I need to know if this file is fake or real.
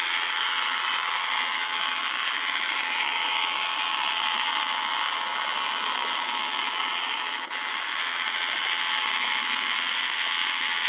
fake